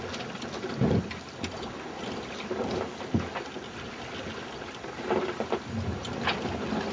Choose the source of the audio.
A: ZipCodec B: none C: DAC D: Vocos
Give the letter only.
B